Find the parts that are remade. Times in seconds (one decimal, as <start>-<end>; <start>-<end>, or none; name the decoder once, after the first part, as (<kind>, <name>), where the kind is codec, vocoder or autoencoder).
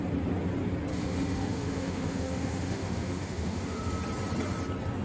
0.9-3.9 (autoencoder, DAC-VAE)